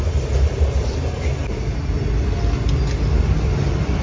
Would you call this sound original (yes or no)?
yes